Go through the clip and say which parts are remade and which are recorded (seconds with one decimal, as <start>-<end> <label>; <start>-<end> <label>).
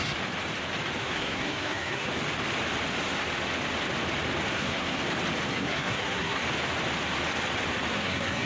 0.0-1.0 recorded; 1.0-2.1 remade; 2.1-4.5 recorded; 4.5-5.0 remade; 5.0-5.5 recorded; 5.5-6.4 remade; 6.4-7.9 recorded; 7.9-8.5 remade